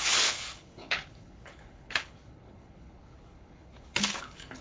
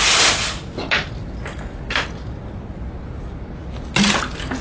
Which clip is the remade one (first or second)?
first